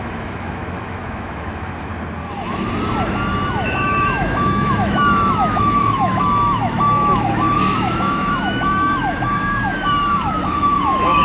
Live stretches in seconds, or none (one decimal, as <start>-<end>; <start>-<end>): 1.9-3.5